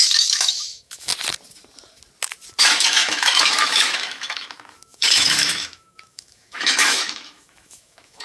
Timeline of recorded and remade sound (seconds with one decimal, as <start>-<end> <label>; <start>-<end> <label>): 0.0-1.1 remade; 1.1-2.6 recorded; 2.6-8.2 remade